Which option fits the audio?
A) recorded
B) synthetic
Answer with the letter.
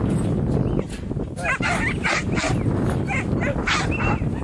A